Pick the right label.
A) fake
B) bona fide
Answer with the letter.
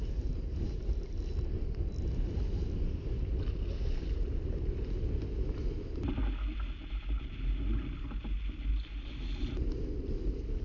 B